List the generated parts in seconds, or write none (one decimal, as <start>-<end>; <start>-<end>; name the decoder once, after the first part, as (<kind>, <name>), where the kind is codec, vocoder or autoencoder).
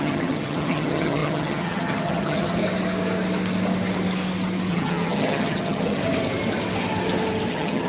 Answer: 0.0-2.6 (vocoder, HiFi-GAN); 4.7-6.0; 7.5-7.9